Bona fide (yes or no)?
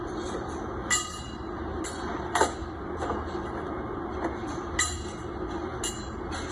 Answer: yes